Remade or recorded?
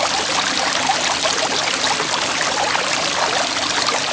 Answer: recorded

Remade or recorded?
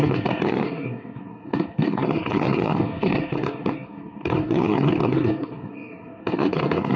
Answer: remade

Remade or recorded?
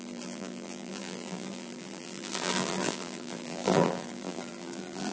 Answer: remade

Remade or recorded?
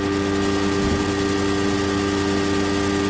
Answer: recorded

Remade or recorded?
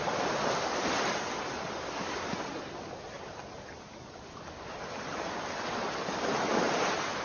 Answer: recorded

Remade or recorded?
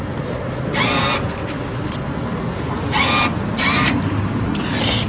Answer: recorded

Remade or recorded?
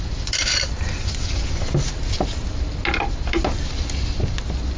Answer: recorded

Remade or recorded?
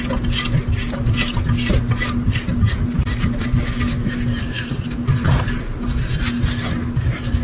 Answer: recorded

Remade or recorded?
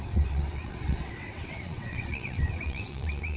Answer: remade